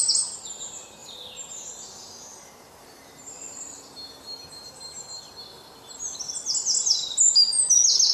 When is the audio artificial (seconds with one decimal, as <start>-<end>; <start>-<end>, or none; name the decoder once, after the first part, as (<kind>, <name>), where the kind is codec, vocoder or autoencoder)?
1.0-1.7 (vocoder, BigVGAN v2); 2.3-5.3